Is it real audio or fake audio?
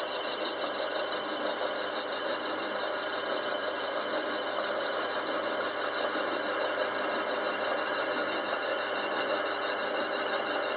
real